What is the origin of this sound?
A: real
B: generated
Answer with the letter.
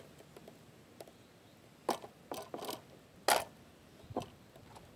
A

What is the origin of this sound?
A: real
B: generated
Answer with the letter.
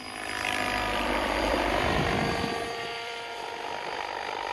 B